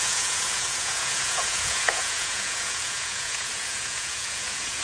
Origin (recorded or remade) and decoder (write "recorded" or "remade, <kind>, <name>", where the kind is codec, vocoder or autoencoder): remade, vocoder, Vocos